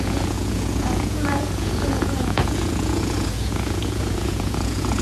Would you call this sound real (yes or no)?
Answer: no